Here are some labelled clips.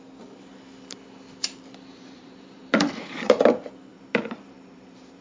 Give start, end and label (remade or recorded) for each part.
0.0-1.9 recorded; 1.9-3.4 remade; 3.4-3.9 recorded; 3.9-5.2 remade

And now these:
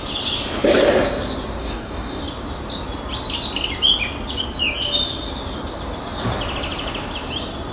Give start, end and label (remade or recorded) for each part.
0.0-1.6 recorded; 1.6-2.2 remade; 2.2-7.7 recorded

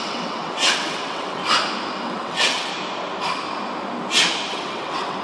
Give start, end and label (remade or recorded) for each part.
0.0-1.4 remade; 1.4-2.0 recorded; 2.0-2.7 remade; 2.7-4.5 recorded; 4.5-5.2 remade

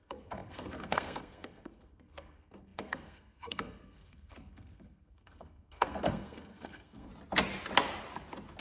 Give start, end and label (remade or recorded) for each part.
0.0-7.1 remade; 7.1-8.6 recorded

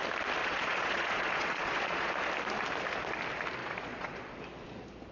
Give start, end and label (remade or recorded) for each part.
0.0-0.4 recorded; 0.4-2.1 remade; 2.1-3.6 recorded; 3.6-4.3 remade; 4.3-5.1 recorded

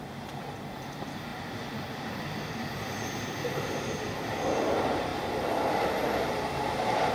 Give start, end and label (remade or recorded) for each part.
0.0-2.9 remade; 2.9-4.5 recorded; 4.5-5.1 remade; 5.1-7.1 recorded

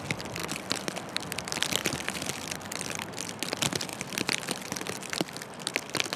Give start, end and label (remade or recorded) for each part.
0.0-0.4 recorded; 0.4-0.9 remade; 0.9-1.8 recorded; 1.8-3.0 remade; 3.0-3.9 recorded; 3.9-4.5 remade; 4.5-6.2 recorded